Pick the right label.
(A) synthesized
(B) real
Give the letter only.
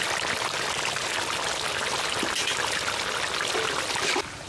B